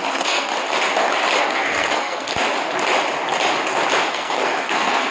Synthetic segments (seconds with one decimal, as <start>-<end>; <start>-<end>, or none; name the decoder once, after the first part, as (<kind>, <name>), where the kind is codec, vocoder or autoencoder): 0.0-0.5 (codec, SNAC); 1.4-2.3; 4.1-5.1